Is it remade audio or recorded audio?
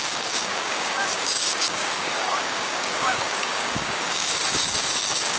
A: remade